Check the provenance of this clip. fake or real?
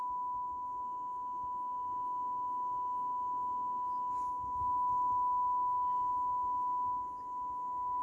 real